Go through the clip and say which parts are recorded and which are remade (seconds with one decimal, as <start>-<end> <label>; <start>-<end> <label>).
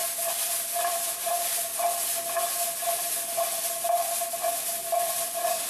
0.0-0.9 recorded; 0.9-1.7 remade; 1.7-5.1 recorded; 5.1-5.7 remade